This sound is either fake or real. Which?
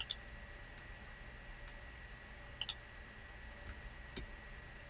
real